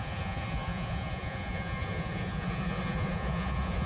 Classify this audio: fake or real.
fake